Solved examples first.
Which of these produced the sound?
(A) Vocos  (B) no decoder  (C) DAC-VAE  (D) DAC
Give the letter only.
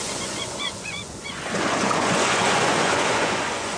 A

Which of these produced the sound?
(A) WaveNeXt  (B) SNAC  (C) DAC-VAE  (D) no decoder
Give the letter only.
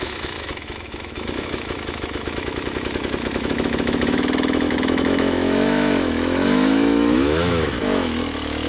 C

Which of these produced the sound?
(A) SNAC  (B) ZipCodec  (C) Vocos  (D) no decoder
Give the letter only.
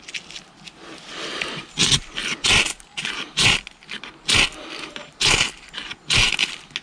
D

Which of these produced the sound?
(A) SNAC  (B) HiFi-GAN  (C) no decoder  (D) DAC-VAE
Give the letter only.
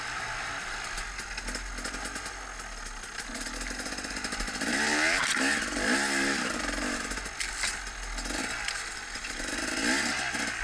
C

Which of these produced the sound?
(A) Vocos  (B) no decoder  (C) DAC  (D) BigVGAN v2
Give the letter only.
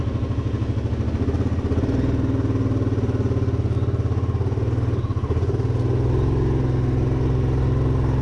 B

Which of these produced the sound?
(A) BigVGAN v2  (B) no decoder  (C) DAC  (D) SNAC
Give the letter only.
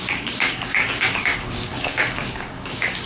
C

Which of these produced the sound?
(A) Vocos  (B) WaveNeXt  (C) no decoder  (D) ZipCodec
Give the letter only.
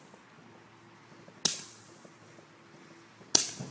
C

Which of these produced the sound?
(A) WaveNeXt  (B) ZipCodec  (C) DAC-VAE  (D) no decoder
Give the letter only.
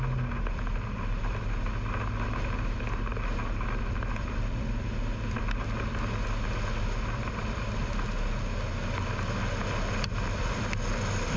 D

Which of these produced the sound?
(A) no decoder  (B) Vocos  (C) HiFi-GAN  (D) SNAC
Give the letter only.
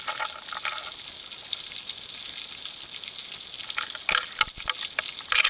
A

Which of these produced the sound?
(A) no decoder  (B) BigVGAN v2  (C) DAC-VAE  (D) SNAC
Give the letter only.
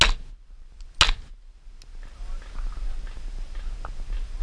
A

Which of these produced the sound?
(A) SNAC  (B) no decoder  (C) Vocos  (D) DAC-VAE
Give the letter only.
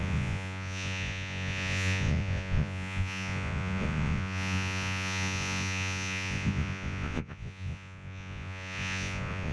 C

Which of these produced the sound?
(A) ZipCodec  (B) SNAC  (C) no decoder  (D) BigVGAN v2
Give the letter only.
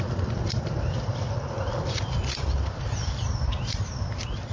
D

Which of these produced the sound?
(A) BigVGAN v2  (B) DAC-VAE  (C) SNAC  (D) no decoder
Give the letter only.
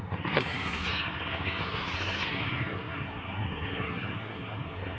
C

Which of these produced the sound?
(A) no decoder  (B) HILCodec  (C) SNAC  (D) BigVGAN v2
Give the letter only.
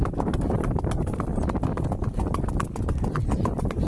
A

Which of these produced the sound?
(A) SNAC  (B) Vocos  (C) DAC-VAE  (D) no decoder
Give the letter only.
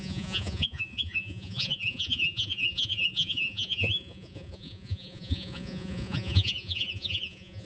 B